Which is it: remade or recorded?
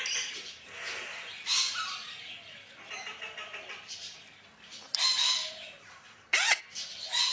recorded